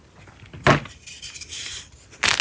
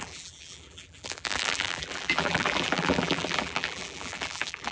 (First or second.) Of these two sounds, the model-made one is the second